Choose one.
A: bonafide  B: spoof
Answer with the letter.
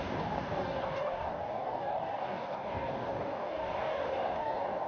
B